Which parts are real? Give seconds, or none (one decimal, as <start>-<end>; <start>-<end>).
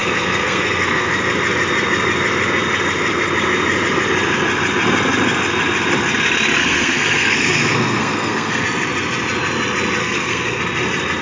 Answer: 1.1-6.6; 8.6-10.0; 10.6-11.2